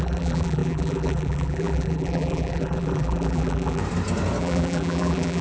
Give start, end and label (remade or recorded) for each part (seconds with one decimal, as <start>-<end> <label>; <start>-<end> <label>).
0.0-3.8 remade; 3.8-4.4 recorded; 4.4-5.4 remade